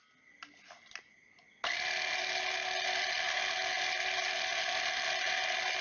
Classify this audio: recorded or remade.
recorded